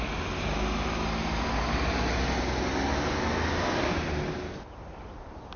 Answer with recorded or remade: recorded